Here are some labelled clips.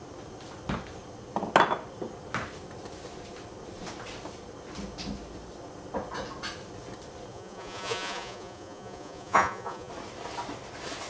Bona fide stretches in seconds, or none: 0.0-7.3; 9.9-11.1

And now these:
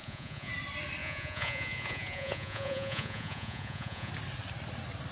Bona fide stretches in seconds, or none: 0.5-1.0; 4.1-5.1

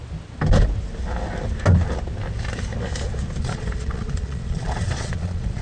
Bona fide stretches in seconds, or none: 0.0-3.4

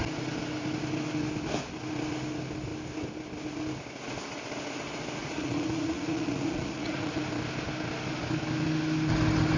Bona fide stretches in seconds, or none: 0.0-5.2; 7.2-9.6

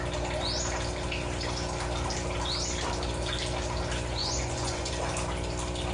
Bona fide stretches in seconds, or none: 0.0-4.2; 4.9-5.9